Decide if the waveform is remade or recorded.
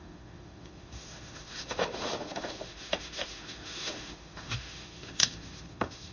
remade